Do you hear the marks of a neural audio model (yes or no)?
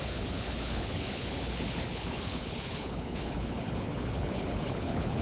yes